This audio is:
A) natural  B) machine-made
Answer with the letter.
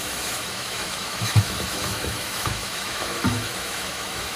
B